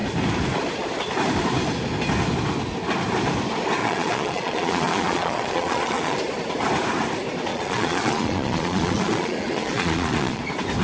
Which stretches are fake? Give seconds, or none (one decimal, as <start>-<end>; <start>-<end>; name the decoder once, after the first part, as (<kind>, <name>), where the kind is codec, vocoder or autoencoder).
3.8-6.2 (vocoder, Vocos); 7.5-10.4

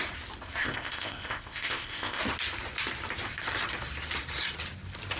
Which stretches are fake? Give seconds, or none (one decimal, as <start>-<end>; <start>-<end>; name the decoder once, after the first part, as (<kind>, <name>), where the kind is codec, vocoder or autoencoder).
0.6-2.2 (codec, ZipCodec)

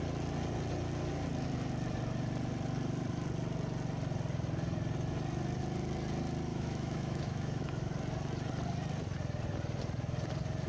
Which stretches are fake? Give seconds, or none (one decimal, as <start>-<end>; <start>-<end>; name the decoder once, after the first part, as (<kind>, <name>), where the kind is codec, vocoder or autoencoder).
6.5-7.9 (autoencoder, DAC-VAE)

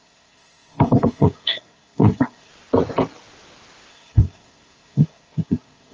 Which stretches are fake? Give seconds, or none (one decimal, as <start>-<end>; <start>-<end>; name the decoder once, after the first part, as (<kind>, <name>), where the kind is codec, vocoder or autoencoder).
0.0-2.5 (codec, SNAC); 3.9-5.9

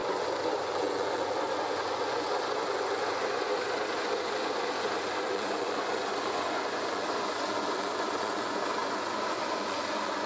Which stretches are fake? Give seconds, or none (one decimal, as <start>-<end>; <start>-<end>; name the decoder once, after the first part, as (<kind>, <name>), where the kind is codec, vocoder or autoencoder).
0.0-10.3 (vocoder, Vocos)

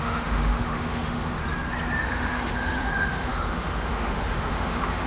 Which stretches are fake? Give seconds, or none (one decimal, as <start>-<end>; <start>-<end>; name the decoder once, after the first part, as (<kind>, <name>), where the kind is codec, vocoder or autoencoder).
0.0-1.4 (autoencoder, DAC-VAE); 2.0-5.1